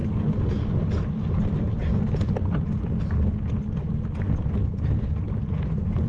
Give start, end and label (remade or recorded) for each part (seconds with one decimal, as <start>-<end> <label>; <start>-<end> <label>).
0.0-5.4 recorded; 5.4-6.1 remade